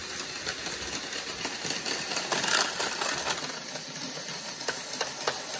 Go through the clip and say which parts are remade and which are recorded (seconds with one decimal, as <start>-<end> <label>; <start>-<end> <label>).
0.0-5.6 recorded